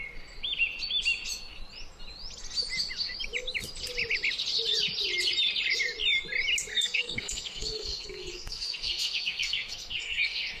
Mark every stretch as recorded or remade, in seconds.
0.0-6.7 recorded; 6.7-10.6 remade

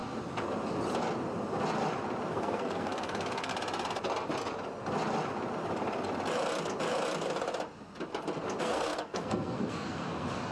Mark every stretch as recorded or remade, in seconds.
0.0-2.3 recorded; 2.3-3.5 remade; 3.5-8.6 recorded; 8.6-10.5 remade